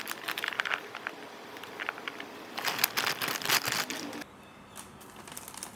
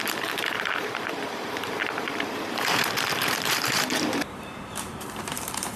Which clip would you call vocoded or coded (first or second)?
second